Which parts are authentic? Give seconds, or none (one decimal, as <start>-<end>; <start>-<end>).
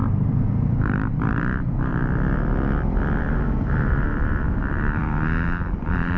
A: 1.9-3.2; 5.0-5.8